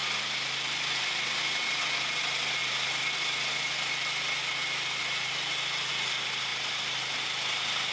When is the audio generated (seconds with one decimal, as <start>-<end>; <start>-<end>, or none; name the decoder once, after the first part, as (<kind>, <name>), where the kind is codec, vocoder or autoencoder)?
none